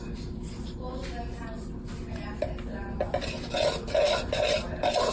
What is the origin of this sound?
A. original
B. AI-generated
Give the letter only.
A